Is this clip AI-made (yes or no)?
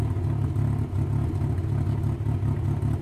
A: no